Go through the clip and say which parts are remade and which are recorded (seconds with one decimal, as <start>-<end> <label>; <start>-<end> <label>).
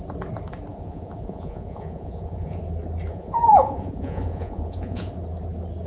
0.0-0.7 recorded; 0.7-2.6 remade; 2.6-3.1 recorded; 3.1-5.1 remade; 5.1-5.9 recorded